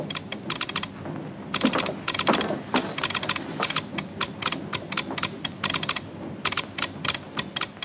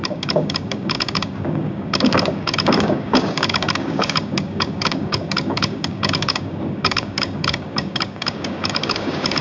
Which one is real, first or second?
first